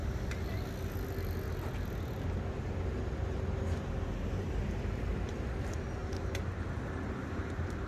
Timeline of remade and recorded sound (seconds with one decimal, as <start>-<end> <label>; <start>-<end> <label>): 0.0-4.4 recorded; 4.4-6.0 remade; 6.0-6.7 recorded; 6.7-7.9 remade